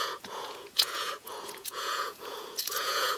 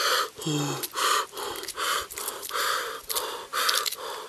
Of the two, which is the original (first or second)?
second